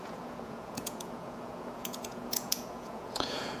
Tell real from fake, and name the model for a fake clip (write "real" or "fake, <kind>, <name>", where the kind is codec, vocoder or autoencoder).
fake, vocoder, Vocos